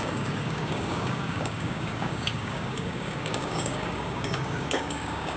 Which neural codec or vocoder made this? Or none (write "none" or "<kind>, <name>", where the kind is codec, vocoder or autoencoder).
codec, DAC